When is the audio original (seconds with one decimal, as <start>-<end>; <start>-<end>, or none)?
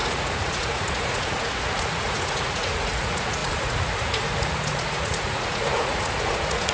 none